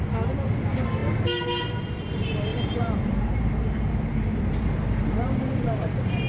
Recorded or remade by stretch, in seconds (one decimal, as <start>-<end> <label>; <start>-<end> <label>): 0.0-2.5 recorded; 2.5-6.3 remade